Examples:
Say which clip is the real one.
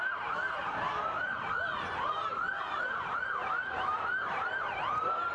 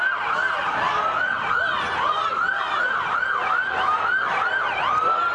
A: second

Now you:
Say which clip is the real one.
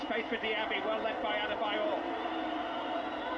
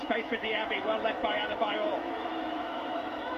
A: first